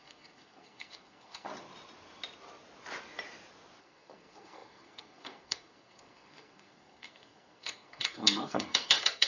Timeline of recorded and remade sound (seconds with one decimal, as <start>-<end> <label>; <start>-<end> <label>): 0.0-1.5 remade; 1.5-3.8 recorded; 3.8-9.3 remade